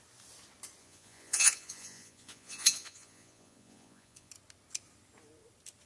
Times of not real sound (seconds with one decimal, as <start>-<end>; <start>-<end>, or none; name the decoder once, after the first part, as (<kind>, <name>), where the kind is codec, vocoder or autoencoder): 0.8-4.3 (vocoder, Vocos)